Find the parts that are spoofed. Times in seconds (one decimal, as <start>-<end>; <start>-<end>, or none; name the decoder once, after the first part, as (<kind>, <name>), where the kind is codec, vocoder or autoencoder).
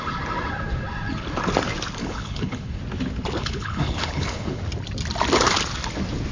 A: 2.0-2.8 (codec, HILCodec); 3.4-4.6